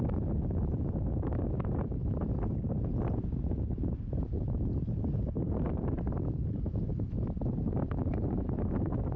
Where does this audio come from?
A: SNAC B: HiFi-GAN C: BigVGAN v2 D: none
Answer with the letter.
C